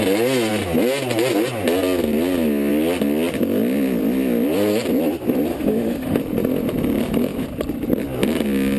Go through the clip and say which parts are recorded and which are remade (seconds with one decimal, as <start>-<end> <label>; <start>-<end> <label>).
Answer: 0.0-5.5 recorded; 5.5-6.2 remade; 6.2-8.8 recorded